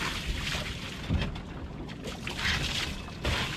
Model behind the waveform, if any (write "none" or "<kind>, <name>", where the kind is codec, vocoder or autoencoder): none